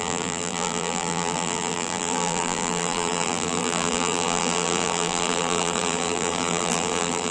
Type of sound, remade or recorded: remade